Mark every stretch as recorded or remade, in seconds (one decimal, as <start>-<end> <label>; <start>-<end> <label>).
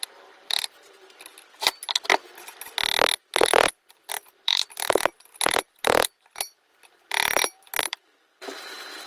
0.0-1.3 remade; 1.3-4.1 recorded; 4.1-6.7 remade; 6.7-7.8 recorded; 7.8-9.1 remade